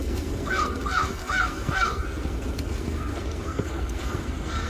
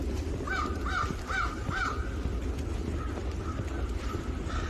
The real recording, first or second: second